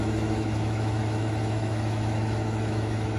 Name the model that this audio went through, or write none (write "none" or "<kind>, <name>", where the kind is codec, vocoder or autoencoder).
autoencoder, DAC-VAE